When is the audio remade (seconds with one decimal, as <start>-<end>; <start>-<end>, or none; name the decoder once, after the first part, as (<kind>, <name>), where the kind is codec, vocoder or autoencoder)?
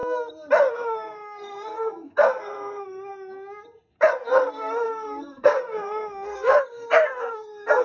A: 0.7-3.1 (codec, SNAC); 4.5-7.8